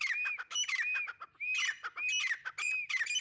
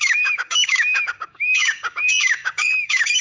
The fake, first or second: second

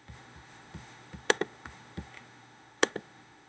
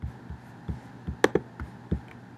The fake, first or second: first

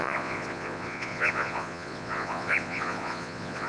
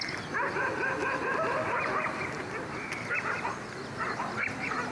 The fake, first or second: first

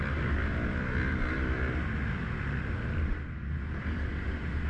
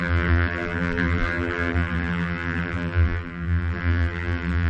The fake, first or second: second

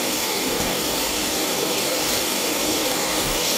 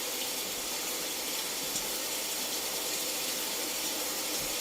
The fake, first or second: first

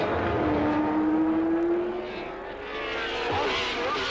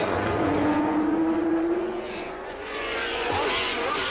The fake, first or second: second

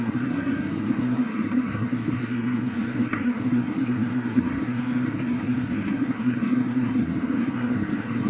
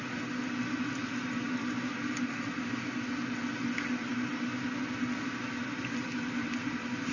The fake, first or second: first